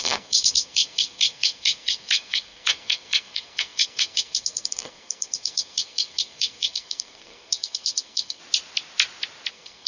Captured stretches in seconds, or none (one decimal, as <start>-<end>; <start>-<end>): 8.4-9.5